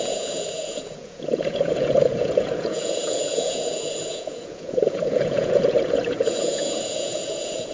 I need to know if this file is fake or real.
fake